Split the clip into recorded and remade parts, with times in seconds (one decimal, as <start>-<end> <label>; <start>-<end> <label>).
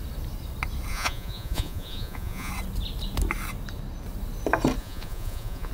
0.0-0.9 recorded; 0.9-2.5 remade; 2.5-4.8 recorded; 4.8-5.7 remade